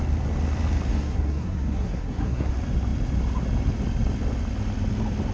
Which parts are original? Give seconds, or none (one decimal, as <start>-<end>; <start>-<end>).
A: 0.0-0.9; 2.5-5.3